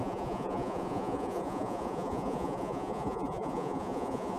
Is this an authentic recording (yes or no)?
no